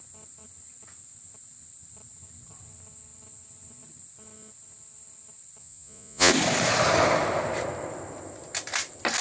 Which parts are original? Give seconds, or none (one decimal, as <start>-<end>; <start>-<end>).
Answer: 0.0-5.6; 6.3-9.2